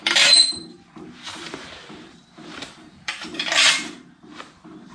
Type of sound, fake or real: fake